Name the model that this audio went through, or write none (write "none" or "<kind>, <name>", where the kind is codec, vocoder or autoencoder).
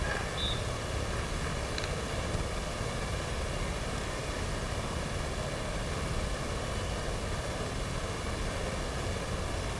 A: none